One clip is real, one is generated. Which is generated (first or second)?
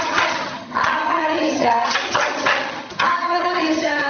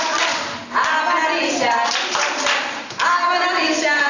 first